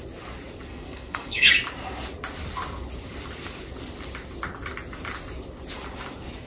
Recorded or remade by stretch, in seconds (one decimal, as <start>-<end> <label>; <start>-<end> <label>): 0.0-0.7 recorded; 0.7-1.5 remade; 1.5-6.5 recorded